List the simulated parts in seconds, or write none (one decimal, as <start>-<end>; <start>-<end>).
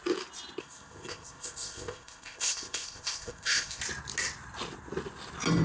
0.6-3.8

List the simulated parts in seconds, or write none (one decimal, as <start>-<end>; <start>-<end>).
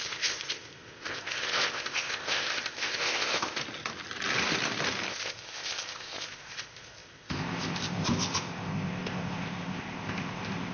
0.0-3.6; 5.1-10.7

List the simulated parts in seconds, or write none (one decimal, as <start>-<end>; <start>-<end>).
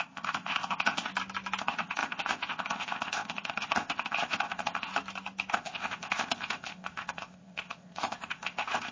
0.0-1.1; 1.6-4.9; 5.5-8.9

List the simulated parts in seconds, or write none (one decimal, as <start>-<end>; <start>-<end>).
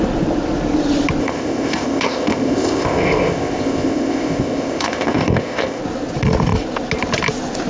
1.2-5.8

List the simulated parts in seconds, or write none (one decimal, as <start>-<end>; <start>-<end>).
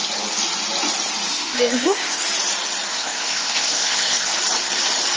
1.3-2.2; 2.9-4.3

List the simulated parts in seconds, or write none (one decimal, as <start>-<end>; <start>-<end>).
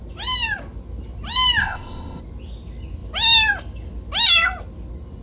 1.6-2.2